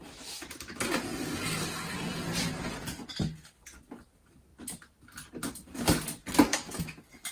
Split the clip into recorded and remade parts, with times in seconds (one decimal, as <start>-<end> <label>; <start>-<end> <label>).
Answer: 0.0-6.5 recorded; 6.5-7.3 remade